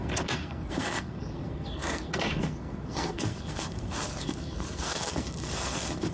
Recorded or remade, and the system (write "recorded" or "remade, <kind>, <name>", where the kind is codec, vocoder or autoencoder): remade, codec, SNAC